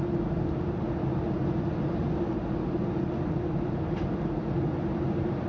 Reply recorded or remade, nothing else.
recorded